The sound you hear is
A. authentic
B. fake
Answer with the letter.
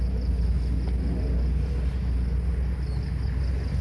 A